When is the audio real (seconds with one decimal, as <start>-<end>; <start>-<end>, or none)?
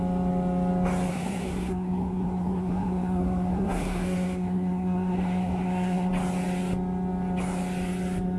0.0-1.1; 6.1-8.4